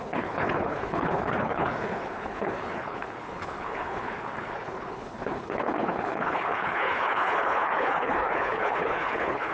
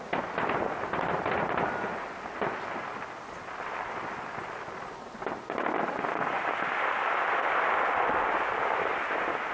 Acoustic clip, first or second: second